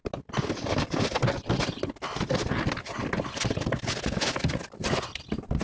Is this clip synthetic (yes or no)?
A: no